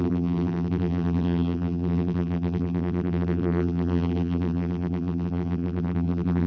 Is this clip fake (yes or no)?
yes